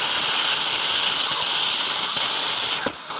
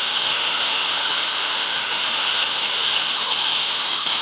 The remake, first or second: second